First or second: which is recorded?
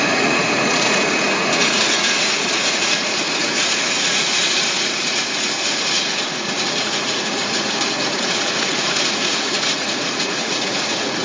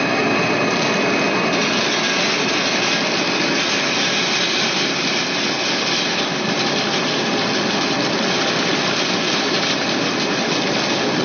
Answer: second